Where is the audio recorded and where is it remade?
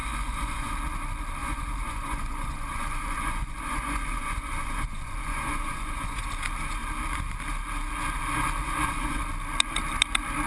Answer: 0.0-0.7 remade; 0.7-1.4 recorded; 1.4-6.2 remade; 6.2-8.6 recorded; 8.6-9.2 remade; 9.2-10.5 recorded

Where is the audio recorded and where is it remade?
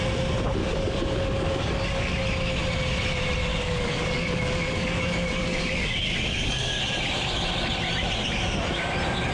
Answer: 0.0-0.6 recorded; 0.6-2.1 remade; 2.1-3.5 recorded; 3.5-6.8 remade; 6.8-9.3 recorded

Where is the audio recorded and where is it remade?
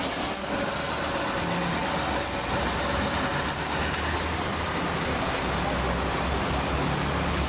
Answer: 0.0-7.5 recorded